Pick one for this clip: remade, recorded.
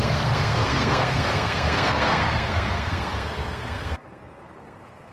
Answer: remade